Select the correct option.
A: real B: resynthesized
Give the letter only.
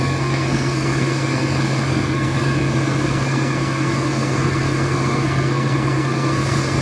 B